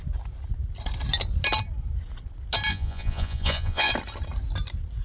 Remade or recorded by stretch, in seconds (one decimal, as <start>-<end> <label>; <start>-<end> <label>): 0.0-2.7 recorded; 2.7-3.9 remade; 3.9-5.0 recorded